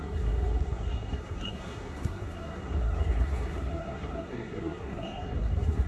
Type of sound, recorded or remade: remade